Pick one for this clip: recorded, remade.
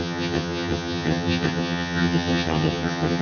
remade